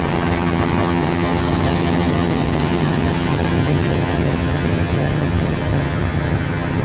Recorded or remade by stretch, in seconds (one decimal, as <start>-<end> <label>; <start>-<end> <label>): 0.0-6.8 remade

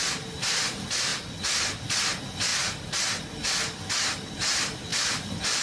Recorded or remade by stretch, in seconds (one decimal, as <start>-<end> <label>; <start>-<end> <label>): 0.0-5.6 recorded

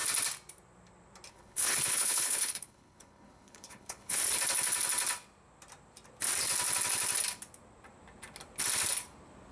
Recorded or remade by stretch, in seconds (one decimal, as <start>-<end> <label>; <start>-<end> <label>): 0.0-1.3 recorded; 1.3-4.2 remade; 4.2-9.5 recorded

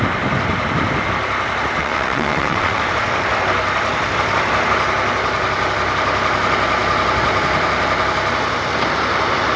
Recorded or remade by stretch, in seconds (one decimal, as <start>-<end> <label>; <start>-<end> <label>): 0.0-1.8 recorded; 1.8-2.8 remade; 2.8-9.6 recorded